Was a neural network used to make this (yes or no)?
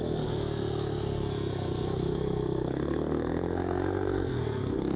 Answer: yes